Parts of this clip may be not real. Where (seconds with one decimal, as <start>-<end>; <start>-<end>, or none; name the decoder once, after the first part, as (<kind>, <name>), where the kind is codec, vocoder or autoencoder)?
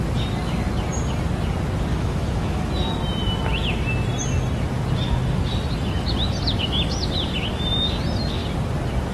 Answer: 1.9-2.7 (autoencoder, DAC-VAE)